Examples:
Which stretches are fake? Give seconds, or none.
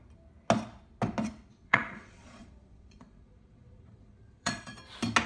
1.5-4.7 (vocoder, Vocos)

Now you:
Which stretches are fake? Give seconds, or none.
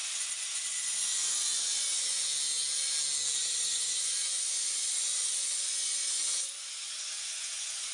0.0-2.3 (vocoder, Vocos); 3.4-7.9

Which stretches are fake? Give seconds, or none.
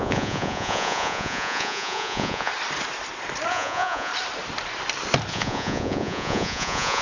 0.0-2.5 (vocoder, Vocos); 3.5-4.1; 5.3-7.0